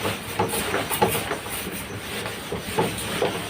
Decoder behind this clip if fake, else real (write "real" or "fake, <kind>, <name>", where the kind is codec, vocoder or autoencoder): real